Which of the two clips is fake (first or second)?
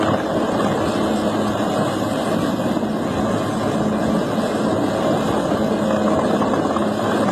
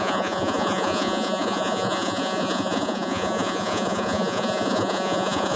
second